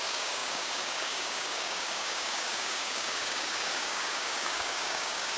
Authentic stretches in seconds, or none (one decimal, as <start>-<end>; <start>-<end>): none

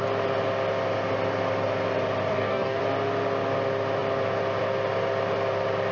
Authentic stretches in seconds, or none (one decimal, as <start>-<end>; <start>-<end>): 0.0-2.3; 2.8-5.9